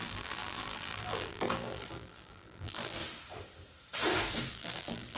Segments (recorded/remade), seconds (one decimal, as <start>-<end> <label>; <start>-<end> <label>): 0.0-3.0 remade; 3.0-4.5 recorded; 4.5-5.2 remade